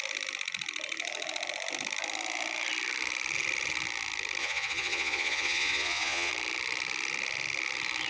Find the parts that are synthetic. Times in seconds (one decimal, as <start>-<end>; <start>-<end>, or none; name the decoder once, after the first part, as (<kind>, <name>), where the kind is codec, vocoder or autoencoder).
4.4-6.3 (vocoder, Vocos)